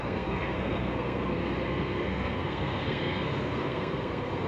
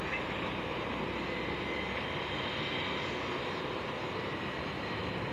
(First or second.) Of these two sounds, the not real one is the first